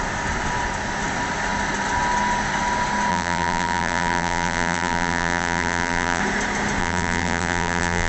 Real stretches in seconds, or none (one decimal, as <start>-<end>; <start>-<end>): 0.0-3.1; 6.2-6.8